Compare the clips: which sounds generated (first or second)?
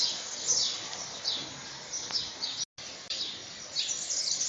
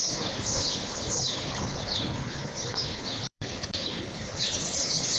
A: second